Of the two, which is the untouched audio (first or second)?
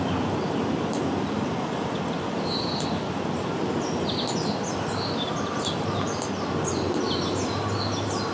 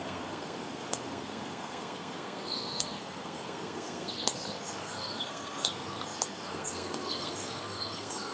first